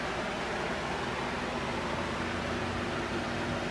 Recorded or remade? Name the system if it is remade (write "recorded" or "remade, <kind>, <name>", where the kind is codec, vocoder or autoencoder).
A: recorded